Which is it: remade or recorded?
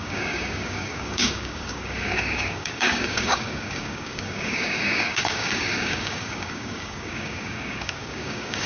remade